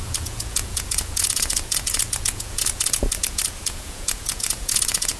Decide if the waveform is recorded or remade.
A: remade